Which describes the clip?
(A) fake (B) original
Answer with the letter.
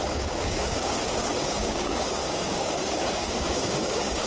A